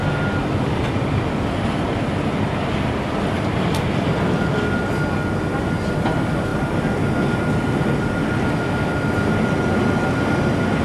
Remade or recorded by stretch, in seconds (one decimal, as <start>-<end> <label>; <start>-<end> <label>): 0.0-10.8 recorded